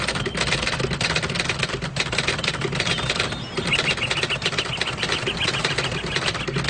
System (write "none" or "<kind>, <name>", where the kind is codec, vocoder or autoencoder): none